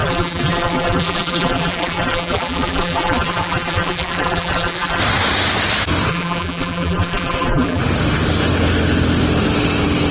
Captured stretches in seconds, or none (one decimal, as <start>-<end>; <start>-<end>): 5.0-6.1; 7.8-10.1